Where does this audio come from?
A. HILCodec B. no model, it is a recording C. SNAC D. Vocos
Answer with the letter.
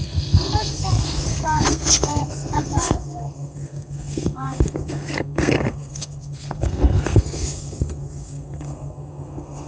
C